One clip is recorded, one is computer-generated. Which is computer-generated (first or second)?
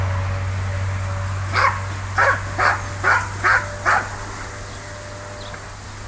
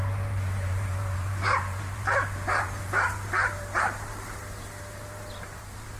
second